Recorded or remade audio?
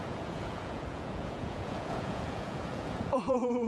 remade